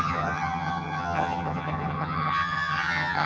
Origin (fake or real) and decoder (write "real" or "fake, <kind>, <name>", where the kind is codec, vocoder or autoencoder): fake, vocoder, HiFi-GAN